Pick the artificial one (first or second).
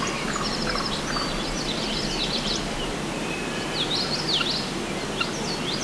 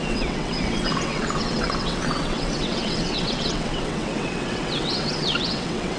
second